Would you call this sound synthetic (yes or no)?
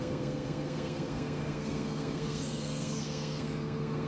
yes